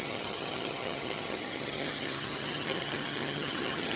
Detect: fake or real fake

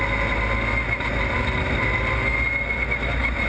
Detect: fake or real real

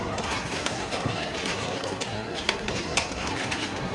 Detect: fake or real fake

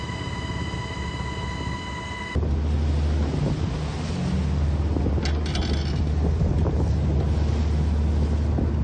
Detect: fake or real real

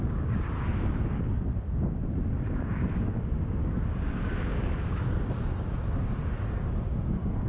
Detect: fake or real fake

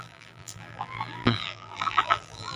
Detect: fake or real fake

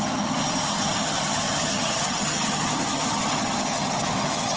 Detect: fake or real fake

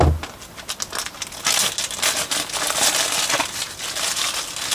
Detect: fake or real real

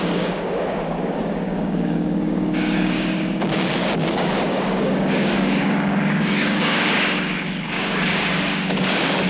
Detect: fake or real fake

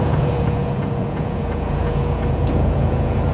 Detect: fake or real fake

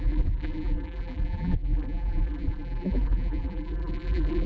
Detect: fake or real fake